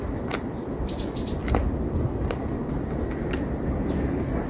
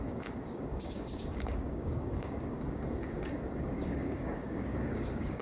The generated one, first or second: second